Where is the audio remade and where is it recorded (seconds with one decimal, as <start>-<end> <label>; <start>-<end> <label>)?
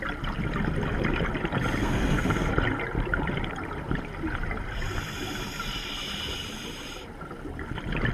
0.0-1.8 recorded; 1.8-2.5 remade; 2.5-8.1 recorded